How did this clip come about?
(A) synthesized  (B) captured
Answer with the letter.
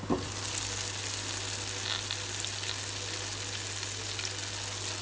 B